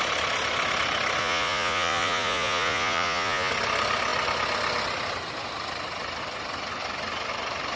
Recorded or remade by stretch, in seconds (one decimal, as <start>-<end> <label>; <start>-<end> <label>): 0.0-1.2 recorded; 1.2-3.5 remade; 3.5-7.8 recorded

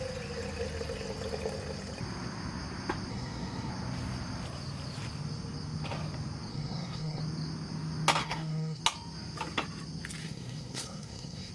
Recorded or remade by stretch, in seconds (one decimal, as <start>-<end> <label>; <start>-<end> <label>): 0.0-3.1 recorded; 3.1-3.7 remade; 3.7-6.5 recorded; 6.5-7.2 remade; 7.2-8.2 recorded; 8.2-8.8 remade; 8.8-10.2 recorded; 10.2-11.5 remade

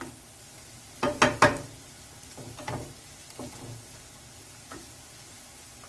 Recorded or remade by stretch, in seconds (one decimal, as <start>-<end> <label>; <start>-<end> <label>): 0.0-5.9 recorded

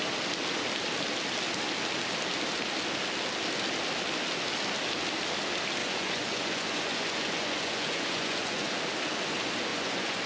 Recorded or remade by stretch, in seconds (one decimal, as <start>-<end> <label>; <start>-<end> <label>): 0.0-5.8 recorded; 5.8-8.8 remade; 8.8-9.7 recorded; 9.7-10.3 remade